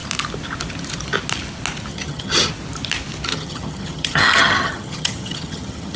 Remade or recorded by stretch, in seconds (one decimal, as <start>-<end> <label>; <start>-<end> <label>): 0.0-1.9 recorded; 1.9-2.5 remade; 2.5-3.3 recorded; 3.3-6.0 remade